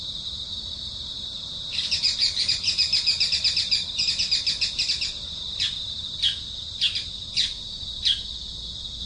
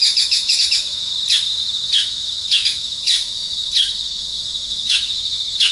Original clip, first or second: first